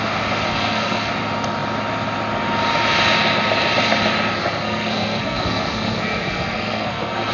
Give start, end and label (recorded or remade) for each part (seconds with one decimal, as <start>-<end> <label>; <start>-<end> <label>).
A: 0.0-0.5 recorded; 0.5-1.1 remade; 1.1-4.4 recorded; 4.4-7.3 remade